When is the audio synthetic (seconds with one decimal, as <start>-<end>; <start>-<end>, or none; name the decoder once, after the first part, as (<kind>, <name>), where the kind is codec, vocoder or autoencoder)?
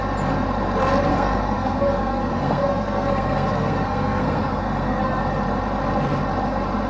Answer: 1.1-5.2 (codec, SNAC)